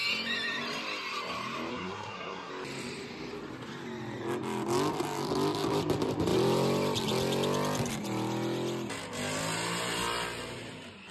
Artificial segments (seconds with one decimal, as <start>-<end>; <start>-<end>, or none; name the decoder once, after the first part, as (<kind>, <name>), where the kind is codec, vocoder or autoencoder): 1.7-2.5 (codec, SNAC)